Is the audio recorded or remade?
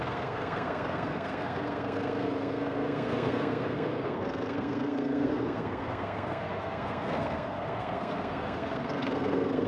remade